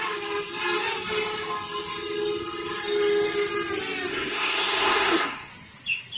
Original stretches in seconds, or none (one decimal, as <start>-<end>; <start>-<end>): 0.0-4.1; 5.5-6.2